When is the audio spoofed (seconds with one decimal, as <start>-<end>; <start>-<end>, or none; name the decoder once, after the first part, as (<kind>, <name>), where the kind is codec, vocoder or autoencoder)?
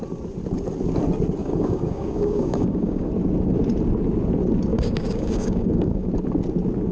1.4-3.1 (codec, DAC); 4.7-6.1